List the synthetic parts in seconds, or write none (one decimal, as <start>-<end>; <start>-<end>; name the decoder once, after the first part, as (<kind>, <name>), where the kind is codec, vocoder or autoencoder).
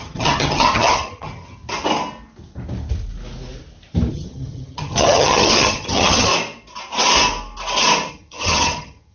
0.0-1.6 (vocoder, HiFi-GAN); 4.1-6.3; 8.1-9.1